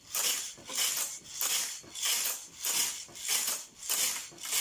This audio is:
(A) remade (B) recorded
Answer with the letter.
B